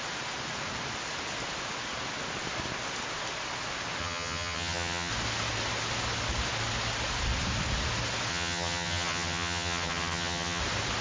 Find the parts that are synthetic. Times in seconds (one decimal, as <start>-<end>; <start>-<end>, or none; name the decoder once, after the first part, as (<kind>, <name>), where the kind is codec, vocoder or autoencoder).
4.0-5.1 (vocoder, HiFi-GAN); 8.3-10.6